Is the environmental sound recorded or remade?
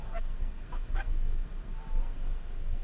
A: remade